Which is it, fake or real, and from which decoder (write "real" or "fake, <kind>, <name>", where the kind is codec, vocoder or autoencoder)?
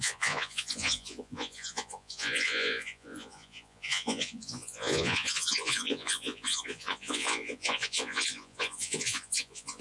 fake, vocoder, Vocos